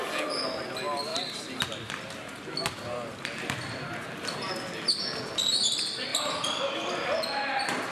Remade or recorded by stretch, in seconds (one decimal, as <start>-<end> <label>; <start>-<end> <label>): 0.0-6.1 recorded; 6.1-7.2 remade; 7.2-7.9 recorded